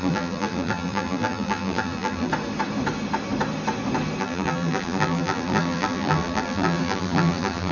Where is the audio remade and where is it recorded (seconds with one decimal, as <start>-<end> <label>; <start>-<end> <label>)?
0.0-2.3 remade; 2.3-4.2 recorded; 4.2-7.7 remade